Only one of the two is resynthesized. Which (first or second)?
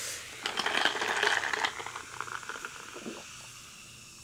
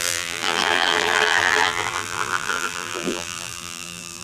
second